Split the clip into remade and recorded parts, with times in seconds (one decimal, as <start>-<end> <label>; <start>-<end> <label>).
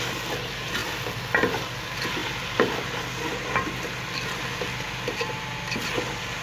0.0-6.4 recorded